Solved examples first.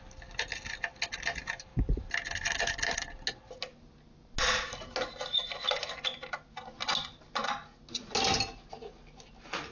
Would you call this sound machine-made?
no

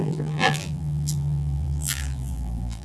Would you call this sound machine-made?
yes